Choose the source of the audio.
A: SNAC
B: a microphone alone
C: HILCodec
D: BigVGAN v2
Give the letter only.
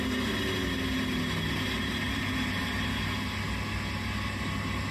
B